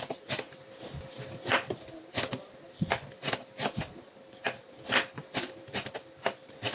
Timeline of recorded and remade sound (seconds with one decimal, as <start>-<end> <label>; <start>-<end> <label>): 0.0-5.2 recorded; 5.2-5.9 remade; 5.9-6.7 recorded